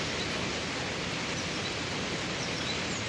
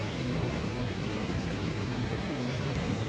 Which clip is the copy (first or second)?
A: second